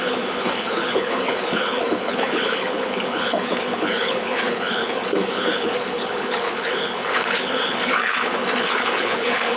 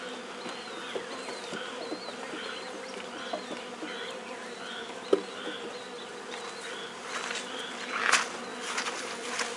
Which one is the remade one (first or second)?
first